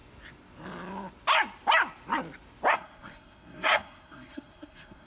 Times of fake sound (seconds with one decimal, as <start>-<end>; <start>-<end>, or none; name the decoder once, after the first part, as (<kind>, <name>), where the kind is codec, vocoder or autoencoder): 2.7-5.1 (codec, SNAC)